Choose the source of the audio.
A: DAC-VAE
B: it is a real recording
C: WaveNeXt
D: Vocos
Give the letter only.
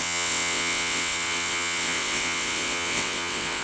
C